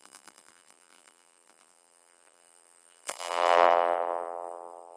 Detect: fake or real fake